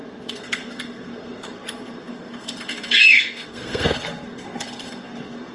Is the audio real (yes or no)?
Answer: no